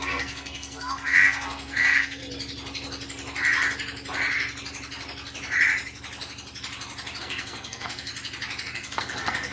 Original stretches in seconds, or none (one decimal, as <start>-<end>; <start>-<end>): 2.2-7.2; 8.1-8.6